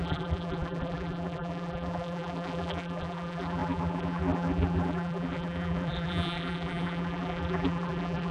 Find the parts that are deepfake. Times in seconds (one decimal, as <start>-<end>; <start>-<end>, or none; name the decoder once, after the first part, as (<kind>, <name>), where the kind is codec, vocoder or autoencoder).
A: 0.0-8.3 (vocoder, BigVGAN v2)